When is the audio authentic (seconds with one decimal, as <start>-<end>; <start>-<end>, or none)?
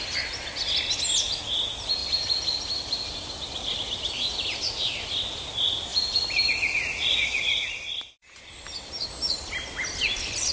0.0-2.0; 5.1-5.9; 8.4-10.5